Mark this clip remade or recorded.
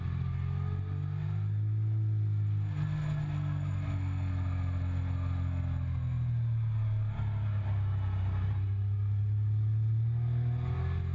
recorded